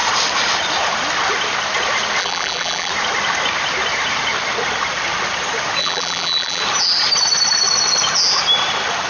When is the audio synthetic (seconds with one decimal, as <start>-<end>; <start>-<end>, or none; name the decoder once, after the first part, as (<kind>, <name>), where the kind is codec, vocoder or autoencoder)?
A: 2.2-2.9 (vocoder, BigVGAN v2); 5.8-6.6